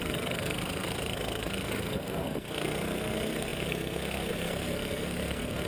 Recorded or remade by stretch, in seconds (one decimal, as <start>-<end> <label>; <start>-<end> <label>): 0.0-5.7 remade